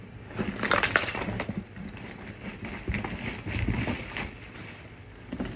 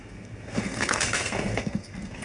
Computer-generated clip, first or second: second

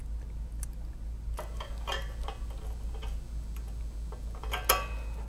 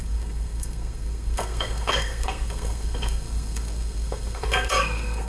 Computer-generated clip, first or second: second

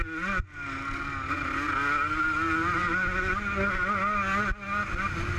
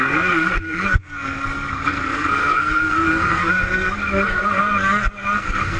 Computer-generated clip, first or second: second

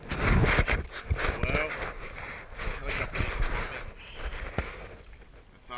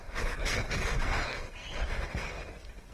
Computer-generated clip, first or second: second